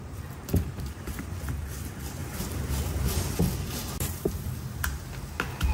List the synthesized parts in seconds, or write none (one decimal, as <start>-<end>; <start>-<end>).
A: 0.0-3.8

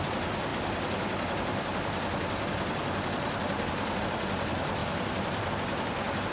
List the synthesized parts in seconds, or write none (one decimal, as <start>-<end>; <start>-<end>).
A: none

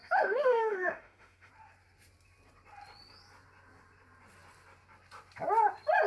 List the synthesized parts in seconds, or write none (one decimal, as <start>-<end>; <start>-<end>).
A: 0.0-1.5

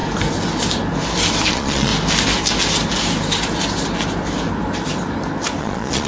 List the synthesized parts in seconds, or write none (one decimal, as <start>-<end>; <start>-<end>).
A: 1.5-1.9; 5.6-6.1

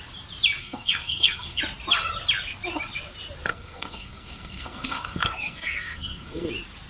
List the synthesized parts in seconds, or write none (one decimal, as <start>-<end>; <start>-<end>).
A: 0.6-1.6; 3.5-6.5

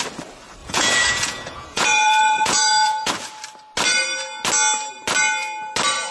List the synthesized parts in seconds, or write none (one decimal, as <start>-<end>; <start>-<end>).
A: 0.6-3.1

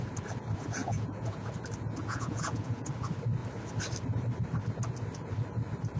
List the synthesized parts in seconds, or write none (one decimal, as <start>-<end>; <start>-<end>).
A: 0.8-1.5; 2.0-2.9

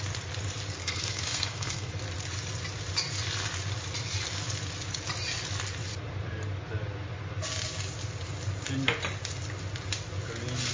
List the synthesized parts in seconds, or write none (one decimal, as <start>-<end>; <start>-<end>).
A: 0.8-1.9